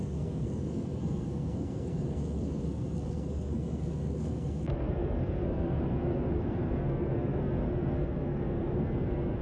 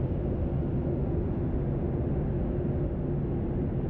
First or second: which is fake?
first